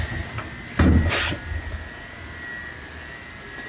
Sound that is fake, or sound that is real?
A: real